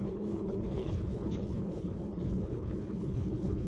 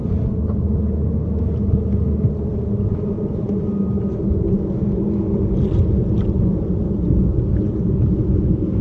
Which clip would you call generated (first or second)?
first